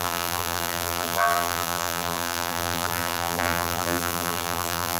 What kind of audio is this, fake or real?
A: fake